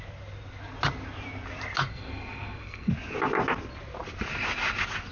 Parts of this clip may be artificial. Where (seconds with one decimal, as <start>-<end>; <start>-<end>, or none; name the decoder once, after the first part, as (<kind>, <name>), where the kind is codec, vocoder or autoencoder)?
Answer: 1.9-2.9 (codec, SNAC)